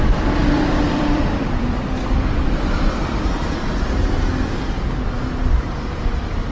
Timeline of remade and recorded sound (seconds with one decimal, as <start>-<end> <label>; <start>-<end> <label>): 0.0-0.4 recorded; 0.4-1.8 remade; 1.8-6.5 recorded